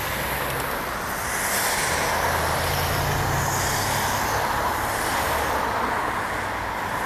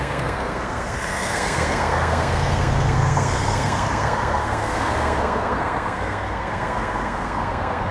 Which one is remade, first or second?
second